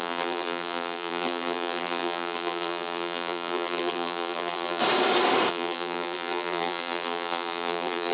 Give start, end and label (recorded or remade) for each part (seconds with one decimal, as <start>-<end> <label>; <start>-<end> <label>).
0.0-4.8 remade; 4.8-5.5 recorded; 5.5-8.1 remade